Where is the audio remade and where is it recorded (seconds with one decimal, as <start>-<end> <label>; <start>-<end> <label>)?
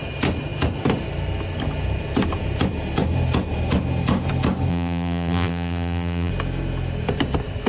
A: 0.0-4.7 recorded; 4.7-6.3 remade; 6.3-7.7 recorded